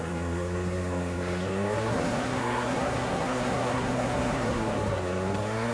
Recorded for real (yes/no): no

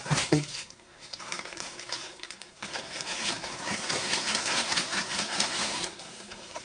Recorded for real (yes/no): no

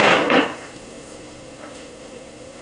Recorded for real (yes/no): no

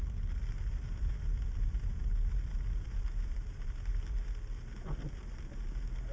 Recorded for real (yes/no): yes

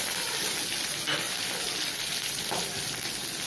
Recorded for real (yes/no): yes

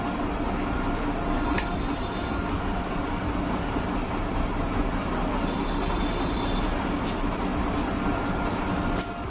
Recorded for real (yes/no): yes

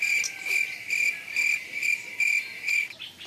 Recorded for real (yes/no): yes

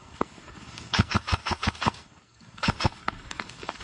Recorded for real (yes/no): no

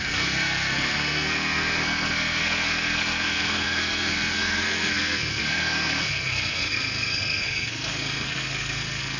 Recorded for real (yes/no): no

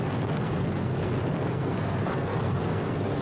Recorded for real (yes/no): no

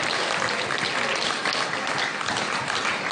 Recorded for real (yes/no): yes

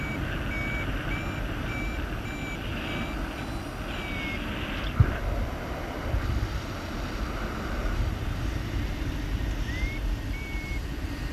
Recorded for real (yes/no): yes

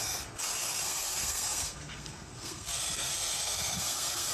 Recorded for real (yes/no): no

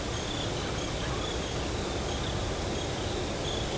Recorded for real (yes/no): yes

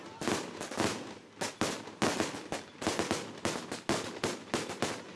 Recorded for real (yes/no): yes